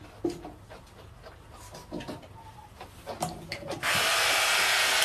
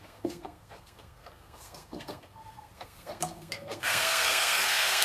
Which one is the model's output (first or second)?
second